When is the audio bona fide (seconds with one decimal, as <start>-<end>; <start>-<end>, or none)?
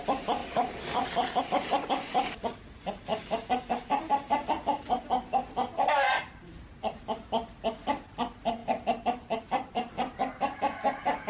0.4-1.4